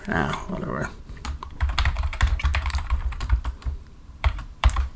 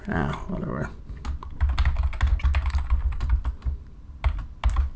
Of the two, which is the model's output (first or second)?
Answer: first